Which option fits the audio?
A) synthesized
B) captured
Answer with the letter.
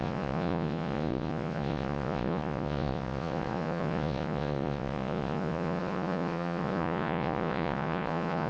A